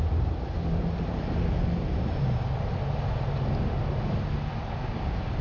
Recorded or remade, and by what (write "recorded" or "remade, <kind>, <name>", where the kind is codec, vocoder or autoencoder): recorded